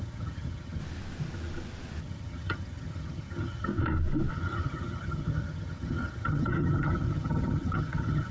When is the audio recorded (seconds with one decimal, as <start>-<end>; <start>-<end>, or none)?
0.8-2.0; 3.7-4.3